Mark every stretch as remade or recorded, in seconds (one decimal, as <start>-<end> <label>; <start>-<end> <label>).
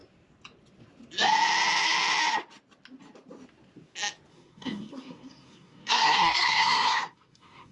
0.0-4.3 recorded; 4.3-7.7 remade